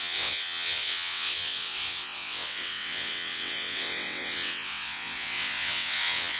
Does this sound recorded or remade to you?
remade